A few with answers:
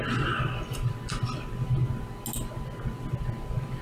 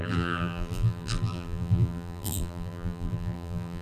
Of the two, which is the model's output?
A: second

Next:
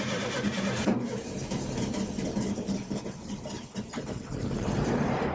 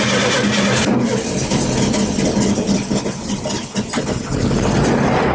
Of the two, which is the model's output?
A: first